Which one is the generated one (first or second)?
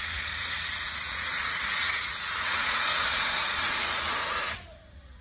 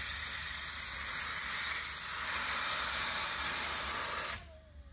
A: first